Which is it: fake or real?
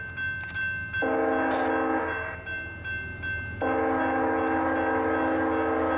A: real